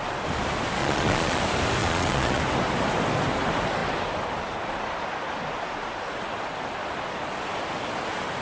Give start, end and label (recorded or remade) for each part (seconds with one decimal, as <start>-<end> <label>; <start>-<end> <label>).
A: 0.0-0.8 recorded; 0.8-1.4 remade; 1.4-1.8 recorded; 1.8-2.4 remade; 2.4-8.4 recorded